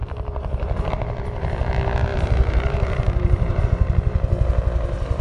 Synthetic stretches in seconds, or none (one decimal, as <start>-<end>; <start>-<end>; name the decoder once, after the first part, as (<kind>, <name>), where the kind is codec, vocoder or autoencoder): 0.0-0.9 (vocoder, BigVGAN v2); 2.1-3.6